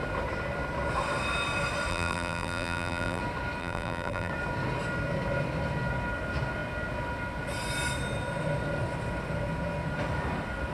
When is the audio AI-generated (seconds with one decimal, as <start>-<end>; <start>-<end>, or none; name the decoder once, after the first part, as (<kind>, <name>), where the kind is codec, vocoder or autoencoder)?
1.9-3.2 (vocoder, BigVGAN v2); 3.6-4.3